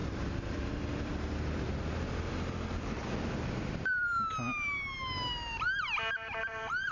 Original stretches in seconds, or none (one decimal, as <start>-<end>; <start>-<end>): 1.1-2.3; 4.1-6.4